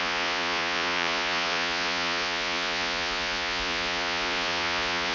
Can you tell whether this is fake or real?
fake